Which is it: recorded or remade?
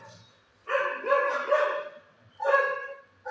recorded